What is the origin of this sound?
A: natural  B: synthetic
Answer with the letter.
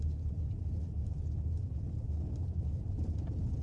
A